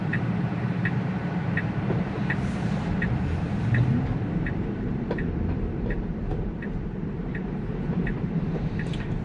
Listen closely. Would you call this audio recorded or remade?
remade